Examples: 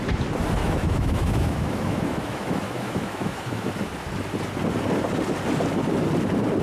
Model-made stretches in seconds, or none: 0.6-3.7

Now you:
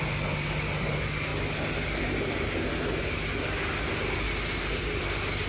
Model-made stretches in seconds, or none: none

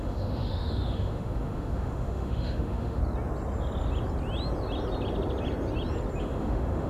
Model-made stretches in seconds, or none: 0.0-3.0; 6.2-6.9

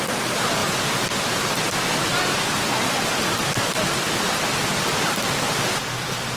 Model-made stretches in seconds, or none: none